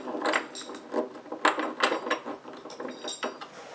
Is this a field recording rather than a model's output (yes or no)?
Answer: yes